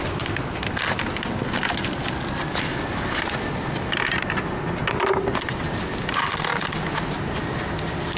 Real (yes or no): yes